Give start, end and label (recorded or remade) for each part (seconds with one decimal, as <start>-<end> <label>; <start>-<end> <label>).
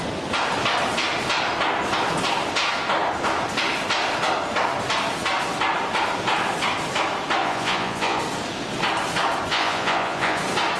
0.0-7.4 recorded; 7.4-8.2 remade; 8.2-9.5 recorded; 9.5-10.4 remade; 10.4-10.8 recorded